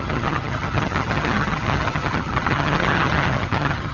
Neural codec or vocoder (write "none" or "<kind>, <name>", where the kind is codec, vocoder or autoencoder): vocoder, HiFi-GAN